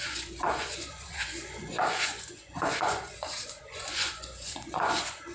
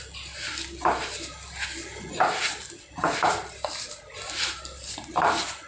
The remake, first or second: first